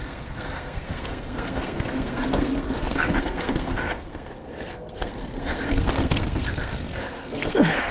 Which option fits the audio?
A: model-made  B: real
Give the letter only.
A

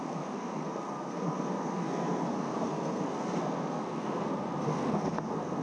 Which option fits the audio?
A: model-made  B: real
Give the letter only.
A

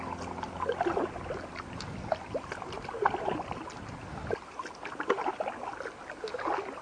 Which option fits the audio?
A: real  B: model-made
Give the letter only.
A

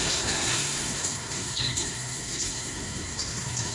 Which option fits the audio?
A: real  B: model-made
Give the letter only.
B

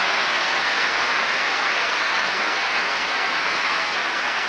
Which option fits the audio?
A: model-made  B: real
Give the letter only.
A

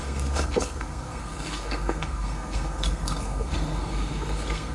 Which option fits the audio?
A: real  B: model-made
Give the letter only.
B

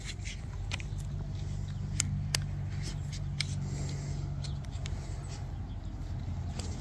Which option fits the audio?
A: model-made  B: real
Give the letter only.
B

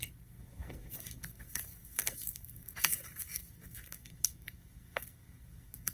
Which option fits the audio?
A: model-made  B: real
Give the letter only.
A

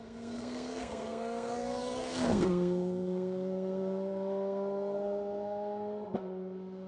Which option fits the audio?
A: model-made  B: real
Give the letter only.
A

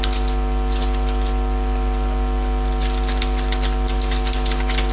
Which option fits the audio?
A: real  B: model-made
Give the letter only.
A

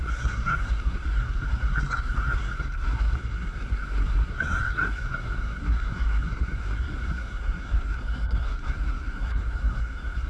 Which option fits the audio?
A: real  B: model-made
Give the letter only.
B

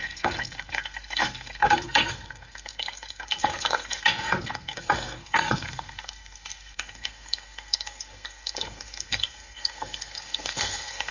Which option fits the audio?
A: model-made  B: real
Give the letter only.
A